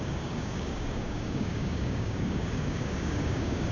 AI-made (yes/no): yes